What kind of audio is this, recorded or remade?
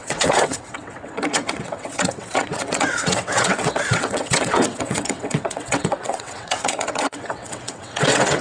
remade